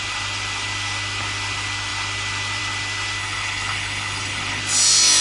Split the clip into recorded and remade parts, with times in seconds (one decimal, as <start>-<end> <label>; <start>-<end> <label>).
0.0-3.2 recorded; 3.2-4.6 remade; 4.6-5.2 recorded